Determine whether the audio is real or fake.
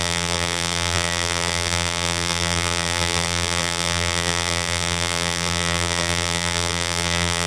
fake